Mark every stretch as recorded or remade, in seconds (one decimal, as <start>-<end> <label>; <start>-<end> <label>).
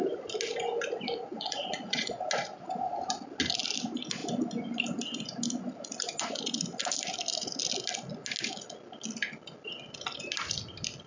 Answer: 0.0-1.3 recorded; 1.3-2.2 remade; 2.2-11.1 recorded